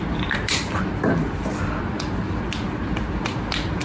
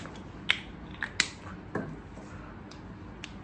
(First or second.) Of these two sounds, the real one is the second